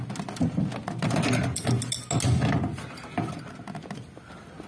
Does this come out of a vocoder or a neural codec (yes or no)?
no